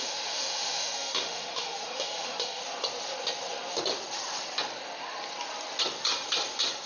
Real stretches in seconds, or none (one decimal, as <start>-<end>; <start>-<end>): 2.6-6.9